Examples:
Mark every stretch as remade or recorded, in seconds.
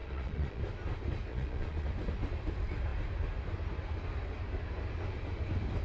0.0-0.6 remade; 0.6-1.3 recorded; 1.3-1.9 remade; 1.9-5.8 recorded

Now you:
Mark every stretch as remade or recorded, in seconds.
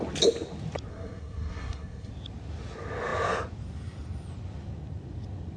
0.0-0.9 recorded; 0.9-2.1 remade; 2.1-5.6 recorded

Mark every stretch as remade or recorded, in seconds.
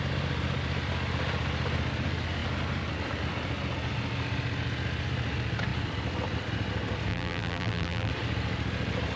0.0-7.1 recorded; 7.1-8.1 remade; 8.1-9.2 recorded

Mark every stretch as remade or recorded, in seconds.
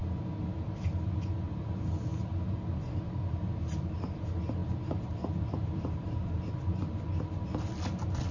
0.0-8.3 recorded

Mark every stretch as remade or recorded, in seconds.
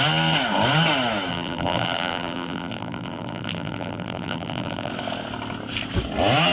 0.0-1.3 recorded; 1.3-4.9 remade; 4.9-6.5 recorded